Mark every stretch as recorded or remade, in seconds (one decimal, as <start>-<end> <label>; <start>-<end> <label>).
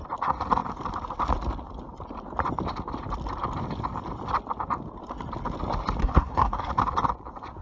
0.0-6.0 recorded; 6.0-6.7 remade; 6.7-7.6 recorded